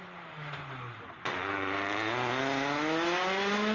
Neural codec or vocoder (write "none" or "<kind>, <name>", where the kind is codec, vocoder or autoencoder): none